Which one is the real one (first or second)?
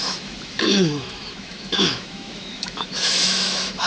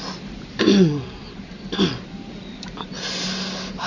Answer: second